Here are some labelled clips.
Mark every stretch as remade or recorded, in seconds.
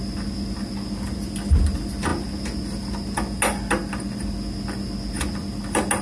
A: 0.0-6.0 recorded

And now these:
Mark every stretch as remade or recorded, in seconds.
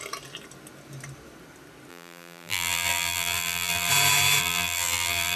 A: 0.0-1.9 recorded; 1.9-3.9 remade; 3.9-4.4 recorded; 4.4-5.4 remade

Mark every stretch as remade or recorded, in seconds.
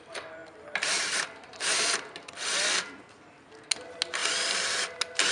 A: 0.0-0.4 recorded; 0.4-1.6 remade; 1.6-5.3 recorded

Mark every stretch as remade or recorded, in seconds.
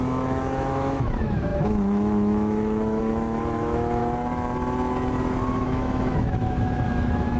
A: 0.0-4.0 remade; 4.0-5.5 recorded; 5.5-7.4 remade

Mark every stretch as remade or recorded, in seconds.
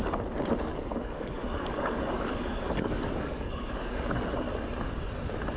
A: 0.0-0.7 recorded; 0.7-4.1 remade; 4.1-5.6 recorded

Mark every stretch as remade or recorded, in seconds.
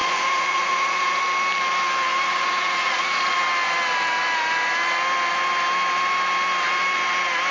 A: 0.0-1.2 remade; 1.2-2.1 recorded; 2.1-3.4 remade; 3.4-7.5 recorded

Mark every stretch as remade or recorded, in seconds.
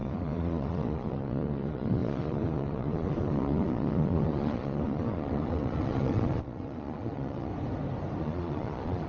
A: 0.0-7.5 remade; 7.5-8.2 recorded; 8.2-9.1 remade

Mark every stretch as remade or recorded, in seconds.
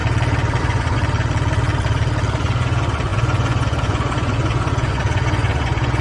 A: 0.0-0.6 recorded; 0.6-1.0 remade; 1.0-2.4 recorded; 2.4-6.0 remade